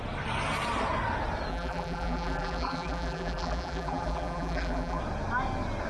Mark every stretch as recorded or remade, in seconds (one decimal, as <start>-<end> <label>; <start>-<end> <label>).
0.0-1.5 recorded; 1.5-5.0 remade; 5.0-5.9 recorded